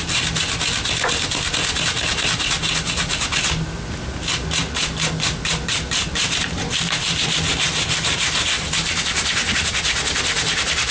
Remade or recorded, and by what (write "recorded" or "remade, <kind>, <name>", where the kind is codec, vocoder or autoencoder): recorded